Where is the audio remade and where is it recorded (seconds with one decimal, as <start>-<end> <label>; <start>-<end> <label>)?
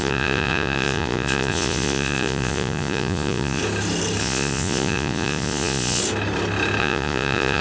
0.0-3.6 remade; 3.6-4.2 recorded; 4.2-6.0 remade; 6.0-6.8 recorded; 6.8-7.6 remade